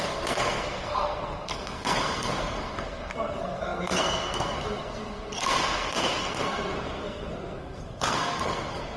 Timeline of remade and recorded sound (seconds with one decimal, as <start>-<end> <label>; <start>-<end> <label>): 0.0-9.0 remade